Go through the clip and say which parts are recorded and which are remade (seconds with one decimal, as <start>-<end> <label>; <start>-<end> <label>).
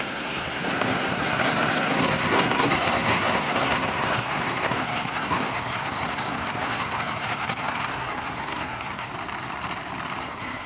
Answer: 0.0-9.1 remade; 9.1-10.2 recorded; 10.2-10.7 remade